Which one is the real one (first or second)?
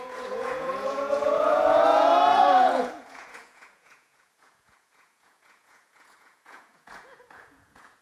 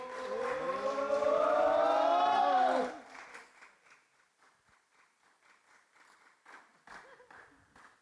second